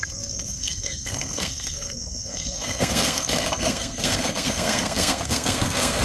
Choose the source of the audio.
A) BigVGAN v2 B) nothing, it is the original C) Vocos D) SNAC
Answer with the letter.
D